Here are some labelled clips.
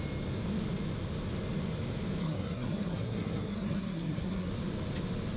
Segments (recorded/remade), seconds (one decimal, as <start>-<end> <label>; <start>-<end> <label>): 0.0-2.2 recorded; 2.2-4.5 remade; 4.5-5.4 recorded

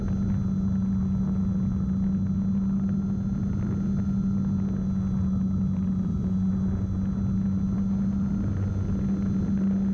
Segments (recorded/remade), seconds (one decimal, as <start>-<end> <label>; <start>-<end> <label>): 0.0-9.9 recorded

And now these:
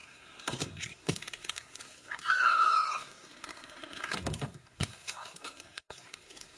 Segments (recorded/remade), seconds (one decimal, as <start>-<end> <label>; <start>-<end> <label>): 0.0-6.6 remade

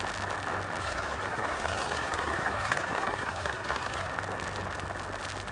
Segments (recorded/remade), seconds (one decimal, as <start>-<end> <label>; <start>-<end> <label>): 0.0-0.8 recorded; 0.8-4.1 remade; 4.1-5.5 recorded

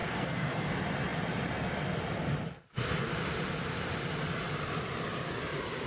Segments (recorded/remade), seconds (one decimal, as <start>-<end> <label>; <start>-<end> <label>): 0.0-0.7 remade; 0.7-5.9 recorded

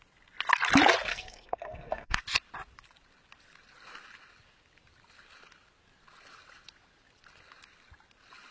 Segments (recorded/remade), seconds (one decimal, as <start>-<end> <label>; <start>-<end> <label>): 0.0-1.1 recorded; 1.1-2.2 remade; 2.2-8.5 recorded

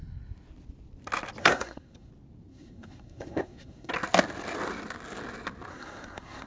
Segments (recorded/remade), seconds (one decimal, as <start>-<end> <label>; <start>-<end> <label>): 0.0-1.4 recorded; 1.4-2.1 remade; 2.1-2.5 recorded; 2.5-3.9 remade; 3.9-5.7 recorded; 5.7-6.5 remade

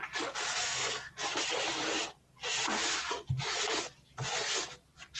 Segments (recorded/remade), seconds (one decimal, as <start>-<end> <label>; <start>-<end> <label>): 0.0-0.6 recorded; 0.6-1.1 remade; 1.1-5.2 recorded